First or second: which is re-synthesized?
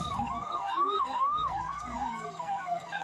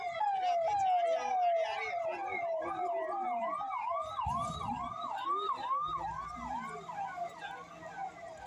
first